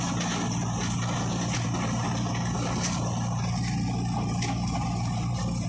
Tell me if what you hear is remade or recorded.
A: recorded